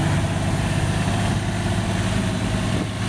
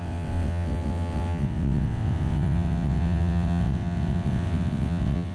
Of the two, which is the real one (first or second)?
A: first